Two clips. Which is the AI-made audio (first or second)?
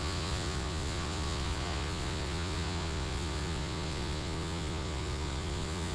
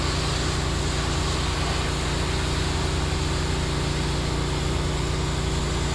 first